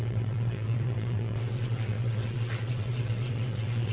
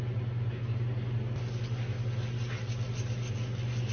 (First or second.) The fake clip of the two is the first